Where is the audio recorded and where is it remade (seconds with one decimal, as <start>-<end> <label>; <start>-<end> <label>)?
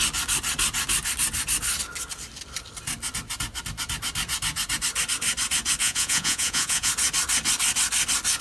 0.0-5.8 recorded; 5.8-6.9 remade; 6.9-8.4 recorded